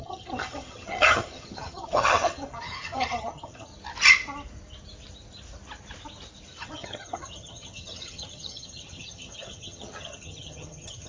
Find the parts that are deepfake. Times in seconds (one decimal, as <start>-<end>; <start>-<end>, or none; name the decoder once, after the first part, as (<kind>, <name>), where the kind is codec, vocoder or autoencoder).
0.0-3.7 (vocoder, HiFi-GAN); 6.6-11.1

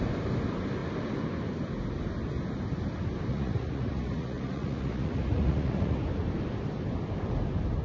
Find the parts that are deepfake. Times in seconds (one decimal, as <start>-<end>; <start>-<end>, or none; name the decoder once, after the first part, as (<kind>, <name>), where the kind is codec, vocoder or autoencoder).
3.3-6.0 (vocoder, Vocos)

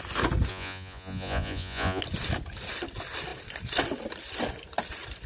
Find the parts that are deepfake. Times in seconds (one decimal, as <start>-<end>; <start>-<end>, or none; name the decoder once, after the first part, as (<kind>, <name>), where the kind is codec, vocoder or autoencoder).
0.5-2.0 (vocoder, Vocos)